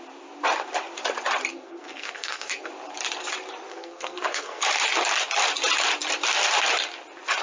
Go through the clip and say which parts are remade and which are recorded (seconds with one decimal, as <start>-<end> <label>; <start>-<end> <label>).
0.0-1.5 recorded; 1.5-2.7 remade; 2.7-3.7 recorded; 3.7-4.6 remade; 4.6-7.4 recorded